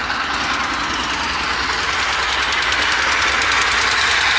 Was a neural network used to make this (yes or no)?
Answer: no